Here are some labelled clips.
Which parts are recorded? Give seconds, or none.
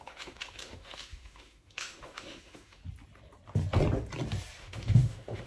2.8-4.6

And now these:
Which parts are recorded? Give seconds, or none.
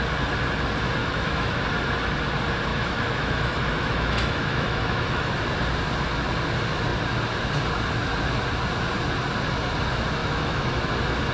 0.0-1.0; 1.6-2.7; 5.3-10.2; 10.8-11.3